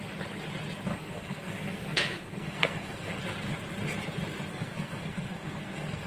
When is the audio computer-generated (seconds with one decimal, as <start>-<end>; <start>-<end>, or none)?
0.9-3.2; 4.5-6.1